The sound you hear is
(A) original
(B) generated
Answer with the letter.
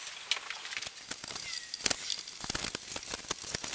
A